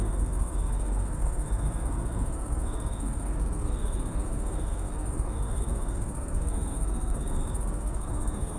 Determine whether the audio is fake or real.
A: fake